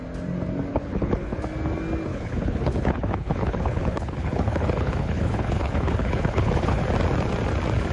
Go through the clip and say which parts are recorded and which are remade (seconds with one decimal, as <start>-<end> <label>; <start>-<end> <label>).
0.0-0.7 recorded; 0.7-1.4 remade; 1.4-2.1 recorded; 2.1-6.8 remade; 6.8-7.9 recorded